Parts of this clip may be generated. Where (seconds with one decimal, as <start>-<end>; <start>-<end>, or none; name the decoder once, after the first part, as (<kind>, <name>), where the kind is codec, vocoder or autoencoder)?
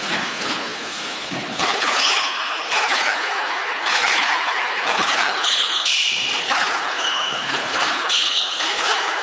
0.0-5.9 (codec, HILCodec); 6.4-9.2